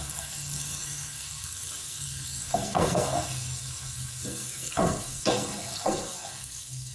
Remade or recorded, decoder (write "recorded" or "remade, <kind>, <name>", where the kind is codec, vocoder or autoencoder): remade, codec, SNAC